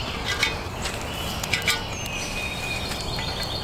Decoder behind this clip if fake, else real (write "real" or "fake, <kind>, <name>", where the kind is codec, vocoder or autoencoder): real